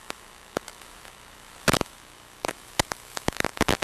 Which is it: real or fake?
fake